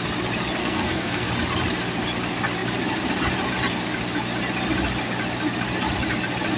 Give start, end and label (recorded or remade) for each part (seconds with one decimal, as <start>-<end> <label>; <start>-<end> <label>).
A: 0.0-0.6 recorded; 0.6-1.3 remade; 1.3-6.6 recorded